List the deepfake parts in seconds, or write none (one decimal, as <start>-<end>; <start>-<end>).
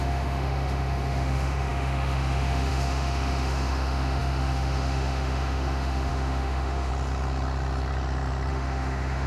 0.0-6.9; 8.5-9.3